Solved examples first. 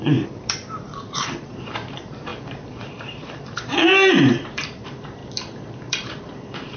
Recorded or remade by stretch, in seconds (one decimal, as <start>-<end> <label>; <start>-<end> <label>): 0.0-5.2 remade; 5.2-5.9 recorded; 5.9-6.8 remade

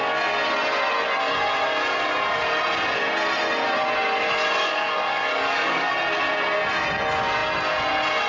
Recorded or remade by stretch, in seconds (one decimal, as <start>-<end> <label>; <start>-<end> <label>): 0.0-4.6 recorded; 4.6-5.9 remade; 5.9-8.3 recorded

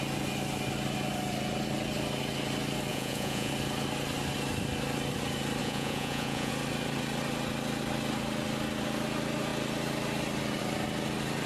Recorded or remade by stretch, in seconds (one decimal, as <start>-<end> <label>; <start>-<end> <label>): 0.0-2.9 recorded; 2.9-3.5 remade; 3.5-5.6 recorded; 5.6-6.5 remade; 6.5-11.5 recorded

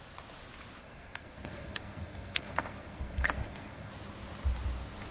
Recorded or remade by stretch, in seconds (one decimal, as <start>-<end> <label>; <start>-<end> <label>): 0.0-0.8 recorded; 0.8-3.9 remade; 3.9-5.1 recorded

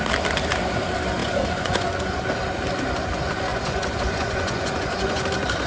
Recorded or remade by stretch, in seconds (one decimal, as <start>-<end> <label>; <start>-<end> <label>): 0.0-1.2 recorded; 1.2-2.2 remade; 2.2-3.5 recorded; 3.5-5.2 remade; 5.2-5.7 recorded

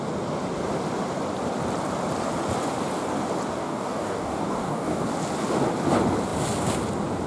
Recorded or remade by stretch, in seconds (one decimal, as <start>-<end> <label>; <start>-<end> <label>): 0.0-3.6 recorded; 3.6-5.0 remade; 5.0-7.3 recorded